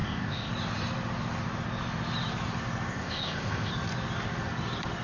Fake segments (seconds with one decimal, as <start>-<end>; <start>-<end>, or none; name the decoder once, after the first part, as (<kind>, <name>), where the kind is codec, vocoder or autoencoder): 0.0-0.5 (codec, ZipCodec); 2.9-3.7